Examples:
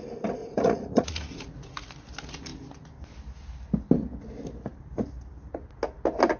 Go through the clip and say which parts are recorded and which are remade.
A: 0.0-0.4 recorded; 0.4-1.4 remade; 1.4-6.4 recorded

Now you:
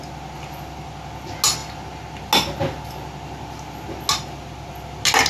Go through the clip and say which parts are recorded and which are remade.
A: 0.0-5.3 recorded

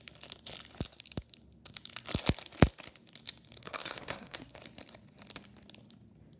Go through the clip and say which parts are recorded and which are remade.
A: 0.0-3.6 recorded; 3.6-4.6 remade; 4.6-6.4 recorded

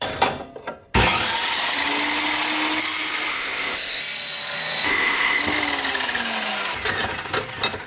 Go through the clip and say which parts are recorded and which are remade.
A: 0.0-3.3 recorded; 3.3-4.0 remade; 4.0-4.9 recorded; 4.9-5.4 remade; 5.4-7.9 recorded

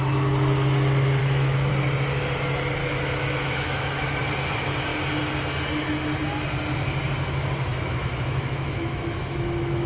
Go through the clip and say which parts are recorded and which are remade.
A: 0.0-1.2 recorded; 1.2-1.7 remade; 1.7-2.8 recorded; 2.8-4.2 remade; 4.2-7.7 recorded; 7.7-9.9 remade

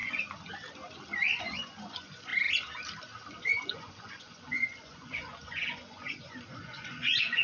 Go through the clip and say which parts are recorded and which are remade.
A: 0.0-1.4 recorded; 1.4-2.3 remade; 2.3-3.4 recorded; 3.4-7.4 remade

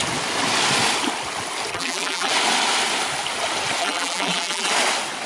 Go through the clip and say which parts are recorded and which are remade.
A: 0.0-1.7 recorded; 1.7-2.3 remade; 2.3-3.8 recorded; 3.8-4.7 remade; 4.7-5.3 recorded

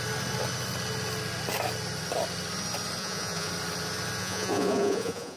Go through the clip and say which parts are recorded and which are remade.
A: 0.0-3.0 recorded; 3.0-3.5 remade; 3.5-4.2 recorded; 4.2-5.4 remade